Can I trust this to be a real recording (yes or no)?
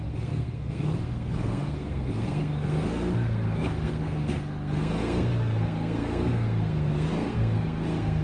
no